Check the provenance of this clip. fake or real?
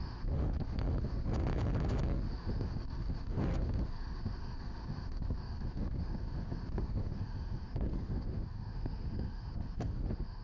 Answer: fake